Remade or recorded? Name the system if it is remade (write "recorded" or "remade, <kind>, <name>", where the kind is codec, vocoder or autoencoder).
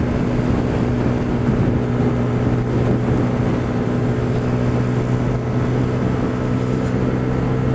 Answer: recorded